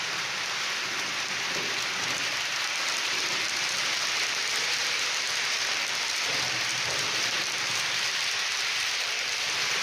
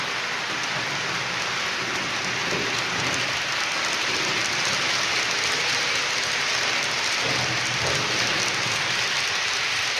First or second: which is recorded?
second